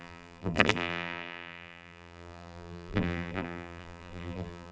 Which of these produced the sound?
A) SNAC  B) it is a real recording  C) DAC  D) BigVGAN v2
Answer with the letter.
D